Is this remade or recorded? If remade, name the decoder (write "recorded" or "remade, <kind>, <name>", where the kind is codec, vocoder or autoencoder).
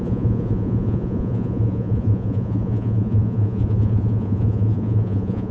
remade, vocoder, Vocos